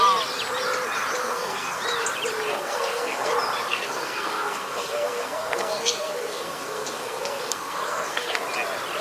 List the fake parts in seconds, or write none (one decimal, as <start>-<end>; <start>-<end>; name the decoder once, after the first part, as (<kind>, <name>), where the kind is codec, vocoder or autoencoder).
1.2-1.8 (codec, SNAC); 2.5-3.3; 3.7-8.4